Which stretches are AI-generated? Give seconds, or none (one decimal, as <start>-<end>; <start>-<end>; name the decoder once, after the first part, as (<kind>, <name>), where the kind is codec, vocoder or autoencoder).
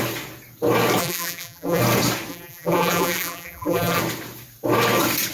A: 1.0-1.8 (vocoder, BigVGAN v2); 2.3-4.0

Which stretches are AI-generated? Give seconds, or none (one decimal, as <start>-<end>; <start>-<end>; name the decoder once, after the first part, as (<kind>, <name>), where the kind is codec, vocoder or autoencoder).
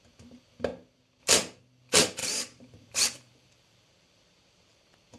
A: 2.2-4.8 (vocoder, BigVGAN v2)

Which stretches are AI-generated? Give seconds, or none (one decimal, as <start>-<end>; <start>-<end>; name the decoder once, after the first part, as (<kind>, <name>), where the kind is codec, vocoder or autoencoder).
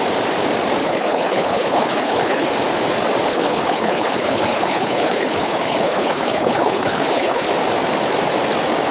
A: 0.8-2.5 (codec, HILCodec); 3.3-7.5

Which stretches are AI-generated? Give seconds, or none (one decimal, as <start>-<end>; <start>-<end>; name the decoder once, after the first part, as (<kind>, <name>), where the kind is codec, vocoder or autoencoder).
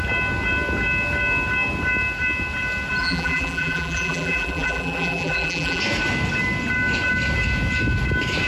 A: 3.0-5.8 (vocoder, BigVGAN v2)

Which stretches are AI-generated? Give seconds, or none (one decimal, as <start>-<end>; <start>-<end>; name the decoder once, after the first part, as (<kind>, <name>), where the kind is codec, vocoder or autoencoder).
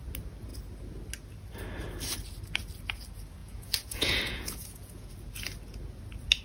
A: 3.4-5.1 (vocoder, Vocos)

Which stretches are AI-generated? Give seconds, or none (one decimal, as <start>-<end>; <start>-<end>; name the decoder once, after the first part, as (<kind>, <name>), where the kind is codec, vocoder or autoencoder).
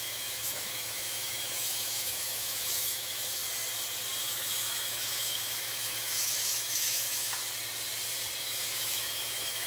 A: 0.0-3.4 (autoencoder, DAC-VAE); 4.2-7.4; 8.4-9.7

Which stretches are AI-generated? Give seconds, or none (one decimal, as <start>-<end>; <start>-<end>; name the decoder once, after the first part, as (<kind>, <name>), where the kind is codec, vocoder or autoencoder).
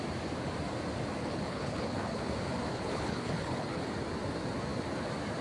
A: 1.2-2.3 (codec, HILCodec); 2.7-3.8